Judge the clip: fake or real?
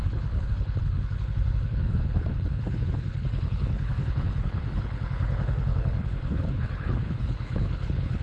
fake